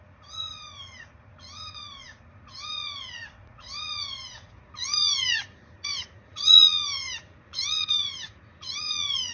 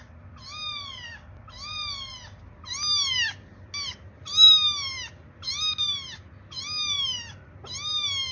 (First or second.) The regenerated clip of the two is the first